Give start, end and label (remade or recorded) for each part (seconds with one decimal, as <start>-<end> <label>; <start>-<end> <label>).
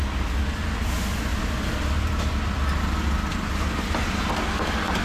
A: 0.0-1.3 recorded; 1.3-4.3 remade; 4.3-5.0 recorded